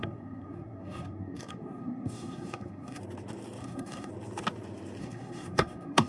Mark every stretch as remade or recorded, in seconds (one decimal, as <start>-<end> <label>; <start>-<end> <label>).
0.0-3.0 remade; 3.0-3.6 recorded; 3.6-4.1 remade; 4.1-5.0 recorded; 5.0-6.1 remade